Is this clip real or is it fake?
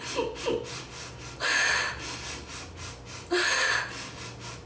real